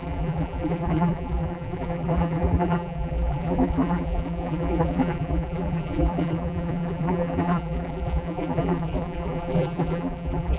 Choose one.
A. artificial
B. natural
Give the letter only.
A